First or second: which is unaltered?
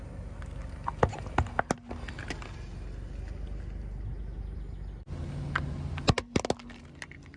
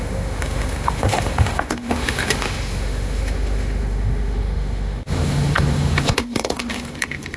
first